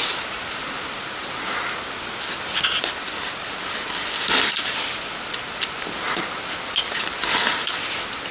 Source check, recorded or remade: recorded